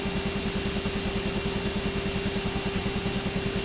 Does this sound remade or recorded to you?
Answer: recorded